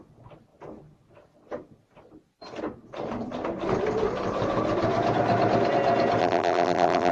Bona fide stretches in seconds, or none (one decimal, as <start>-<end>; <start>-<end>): 0.0-6.2